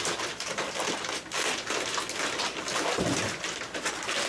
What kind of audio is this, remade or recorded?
recorded